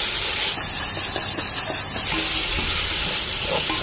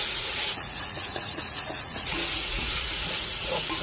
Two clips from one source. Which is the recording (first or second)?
first